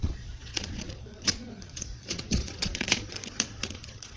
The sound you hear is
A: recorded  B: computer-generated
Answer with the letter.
B